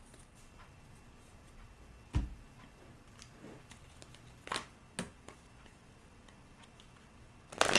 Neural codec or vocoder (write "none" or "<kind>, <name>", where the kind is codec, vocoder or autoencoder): none